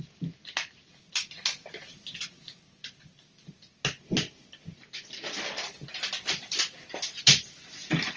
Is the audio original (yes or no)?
yes